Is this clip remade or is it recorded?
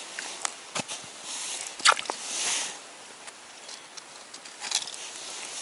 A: recorded